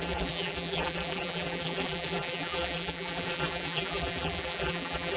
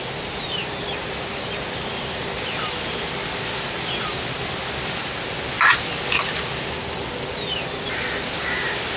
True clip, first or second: second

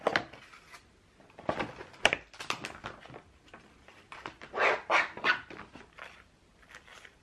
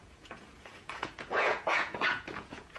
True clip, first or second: first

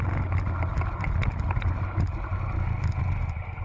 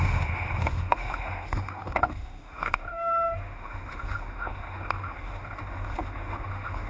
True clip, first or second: first